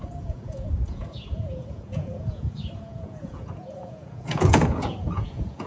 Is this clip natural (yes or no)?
no